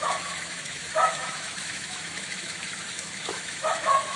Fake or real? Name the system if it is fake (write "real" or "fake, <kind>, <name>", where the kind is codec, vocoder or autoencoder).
fake, autoencoder, DAC-VAE